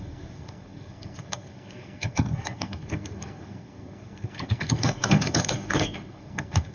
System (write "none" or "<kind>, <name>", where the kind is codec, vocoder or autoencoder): codec, SNAC